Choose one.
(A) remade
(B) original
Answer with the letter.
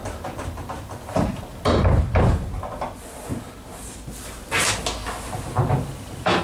B